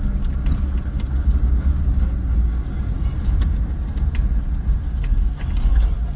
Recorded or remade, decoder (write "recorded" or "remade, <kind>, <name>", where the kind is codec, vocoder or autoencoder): recorded